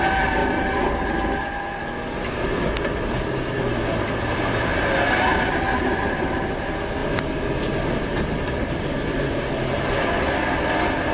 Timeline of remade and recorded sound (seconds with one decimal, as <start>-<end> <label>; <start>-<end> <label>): 0.0-11.1 recorded